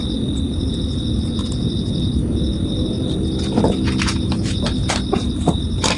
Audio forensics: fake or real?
real